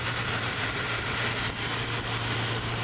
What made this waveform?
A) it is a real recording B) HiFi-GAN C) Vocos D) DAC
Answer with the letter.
A